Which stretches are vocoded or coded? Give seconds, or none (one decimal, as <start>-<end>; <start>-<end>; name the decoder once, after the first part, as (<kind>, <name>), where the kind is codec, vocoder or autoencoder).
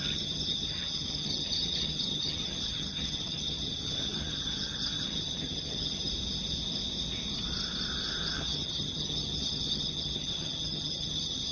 0.0-6.1 (vocoder, HiFi-GAN); 8.3-11.5